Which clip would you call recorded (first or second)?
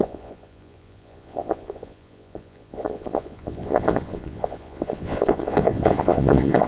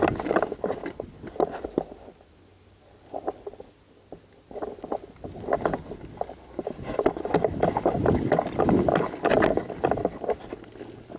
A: second